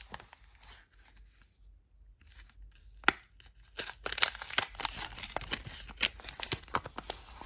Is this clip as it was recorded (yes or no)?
yes